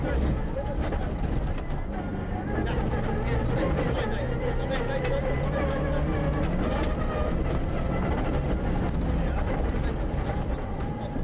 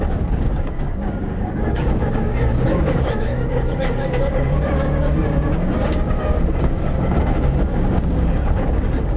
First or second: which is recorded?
first